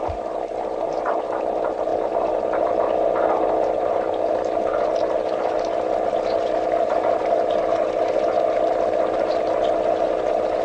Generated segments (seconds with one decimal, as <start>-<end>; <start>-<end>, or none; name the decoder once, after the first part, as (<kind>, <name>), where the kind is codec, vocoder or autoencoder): none

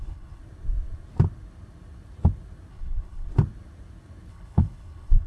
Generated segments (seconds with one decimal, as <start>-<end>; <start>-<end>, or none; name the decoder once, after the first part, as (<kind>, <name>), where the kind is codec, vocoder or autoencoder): 0.0-0.4 (codec, HILCodec); 2.7-3.3; 4.3-5.3

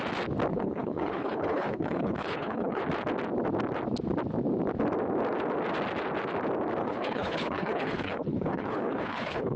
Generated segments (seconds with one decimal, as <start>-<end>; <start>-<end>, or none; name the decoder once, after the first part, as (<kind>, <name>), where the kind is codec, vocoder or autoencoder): 0.5-2.8 (codec, HILCodec); 6.8-9.6

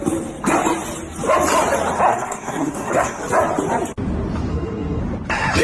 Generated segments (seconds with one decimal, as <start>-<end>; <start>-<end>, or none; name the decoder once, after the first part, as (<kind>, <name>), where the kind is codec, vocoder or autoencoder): 2.1-3.2 (codec, SNAC); 4.5-5.0

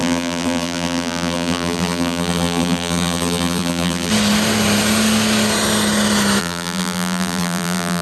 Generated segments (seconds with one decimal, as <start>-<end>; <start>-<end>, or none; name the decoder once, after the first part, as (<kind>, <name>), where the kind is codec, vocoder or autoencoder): 0.0-4.1 (vocoder, BigVGAN v2); 6.4-8.0

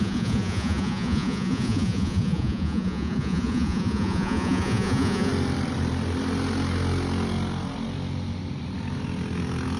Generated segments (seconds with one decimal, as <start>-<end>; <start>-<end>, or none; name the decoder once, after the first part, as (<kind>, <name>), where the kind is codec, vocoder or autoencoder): 0.0-5.3 (vocoder, Vocos)

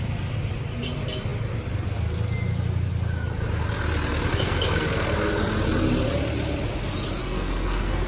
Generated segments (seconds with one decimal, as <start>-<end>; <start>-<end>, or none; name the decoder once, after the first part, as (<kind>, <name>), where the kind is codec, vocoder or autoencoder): 4.3-5.3 (codec, SNAC); 7.2-8.1

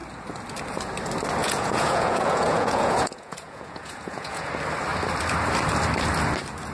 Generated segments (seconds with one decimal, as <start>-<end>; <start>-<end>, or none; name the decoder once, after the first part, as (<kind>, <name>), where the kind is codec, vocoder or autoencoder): 1.4-4.5 (vocoder, Vocos)